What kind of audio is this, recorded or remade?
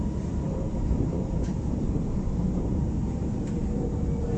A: remade